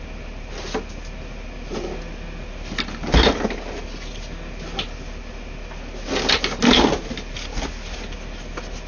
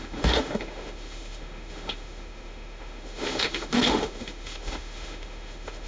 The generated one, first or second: second